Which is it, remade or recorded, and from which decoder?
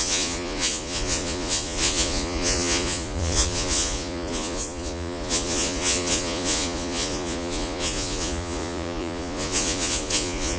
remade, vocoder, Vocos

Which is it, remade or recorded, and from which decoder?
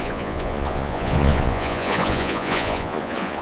remade, vocoder, Vocos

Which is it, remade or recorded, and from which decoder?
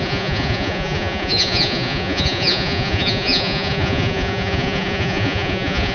remade, vocoder, Vocos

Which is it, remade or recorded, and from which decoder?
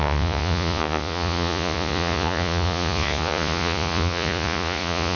remade, vocoder, Vocos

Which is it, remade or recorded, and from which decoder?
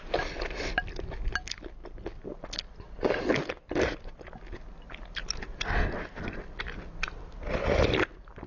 recorded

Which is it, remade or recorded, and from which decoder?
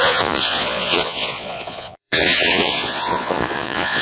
remade, vocoder, Vocos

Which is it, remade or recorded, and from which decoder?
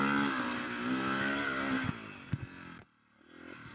recorded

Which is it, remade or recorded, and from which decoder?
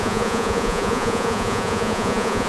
remade, vocoder, Vocos